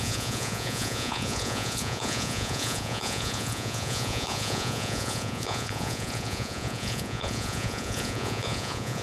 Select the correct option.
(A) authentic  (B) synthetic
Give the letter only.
B